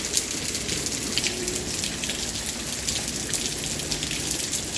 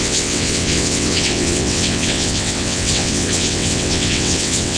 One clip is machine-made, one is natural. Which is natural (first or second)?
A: first